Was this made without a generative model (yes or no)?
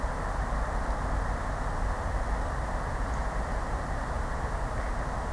yes